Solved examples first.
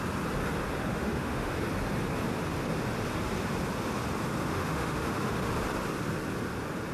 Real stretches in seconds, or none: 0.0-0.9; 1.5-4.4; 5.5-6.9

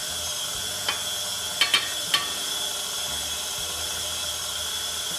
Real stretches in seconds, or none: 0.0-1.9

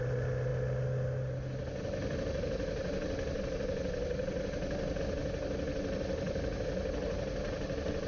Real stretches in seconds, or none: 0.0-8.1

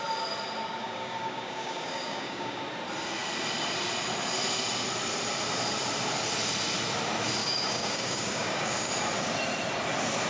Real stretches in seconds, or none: 0.0-0.8; 2.6-7.4; 8.9-10.3